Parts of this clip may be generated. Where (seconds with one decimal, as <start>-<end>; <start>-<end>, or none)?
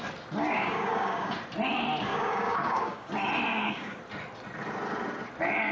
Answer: 0.4-1.3; 2.1-3.1; 3.5-4.0